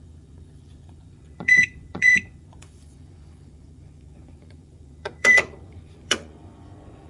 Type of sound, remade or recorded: remade